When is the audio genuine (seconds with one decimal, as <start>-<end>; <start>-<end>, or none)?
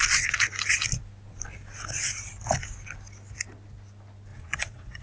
0.0-4.3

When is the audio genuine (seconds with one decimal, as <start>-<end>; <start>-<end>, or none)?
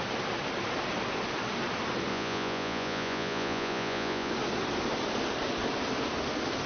0.0-2.1; 4.3-6.7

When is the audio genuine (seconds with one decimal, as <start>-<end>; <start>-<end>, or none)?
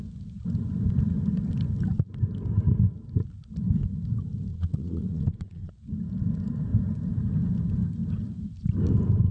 0.0-4.5; 5.7-9.3